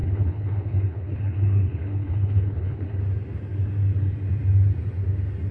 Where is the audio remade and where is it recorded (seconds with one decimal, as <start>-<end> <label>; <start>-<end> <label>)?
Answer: 0.0-3.0 remade; 3.0-5.5 recorded